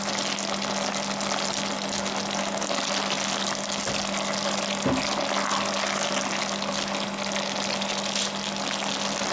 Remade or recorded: recorded